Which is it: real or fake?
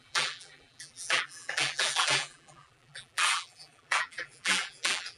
fake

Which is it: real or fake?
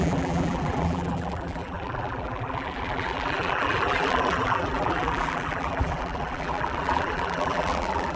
fake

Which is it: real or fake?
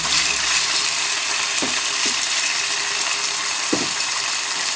fake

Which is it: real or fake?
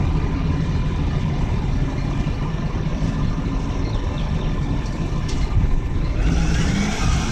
real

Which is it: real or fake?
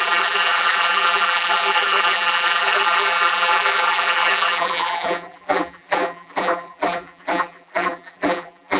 fake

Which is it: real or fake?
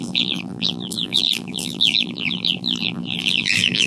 fake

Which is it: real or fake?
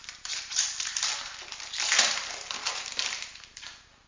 fake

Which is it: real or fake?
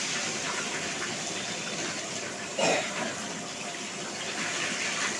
fake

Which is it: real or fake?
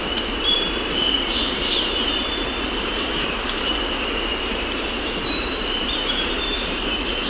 fake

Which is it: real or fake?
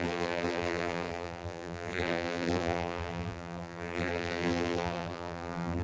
fake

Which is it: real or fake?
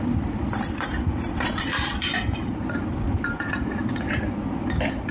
fake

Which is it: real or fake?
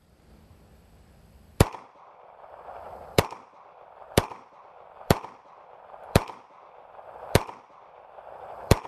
fake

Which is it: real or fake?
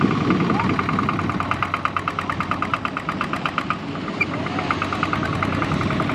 real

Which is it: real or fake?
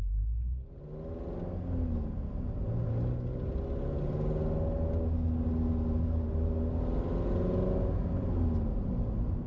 real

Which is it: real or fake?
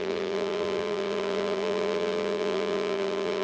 fake